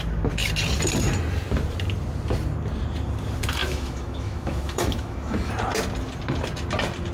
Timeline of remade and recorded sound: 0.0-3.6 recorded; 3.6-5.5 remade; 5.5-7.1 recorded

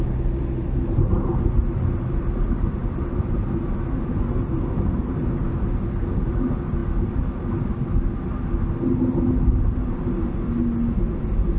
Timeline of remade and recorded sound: 0.0-11.6 recorded

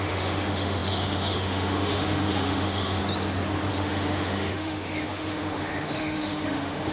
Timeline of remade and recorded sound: 0.0-3.0 remade; 3.0-3.7 recorded; 3.7-6.9 remade